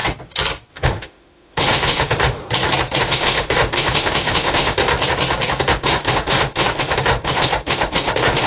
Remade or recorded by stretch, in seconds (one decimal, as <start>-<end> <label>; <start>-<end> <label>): 0.0-0.7 recorded; 0.7-2.4 remade; 2.4-3.0 recorded; 3.0-4.8 remade; 4.8-5.7 recorded; 5.7-8.5 remade